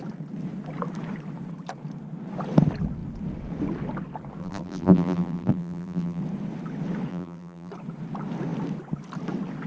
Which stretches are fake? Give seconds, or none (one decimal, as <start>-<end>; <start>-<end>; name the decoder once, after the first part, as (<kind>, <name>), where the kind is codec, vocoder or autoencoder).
4.4-6.2 (vocoder, BigVGAN v2); 7.1-7.7